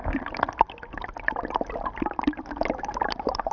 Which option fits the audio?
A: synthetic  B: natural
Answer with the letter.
A